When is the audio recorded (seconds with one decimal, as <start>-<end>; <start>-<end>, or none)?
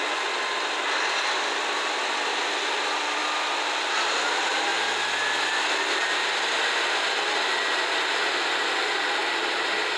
0.0-10.0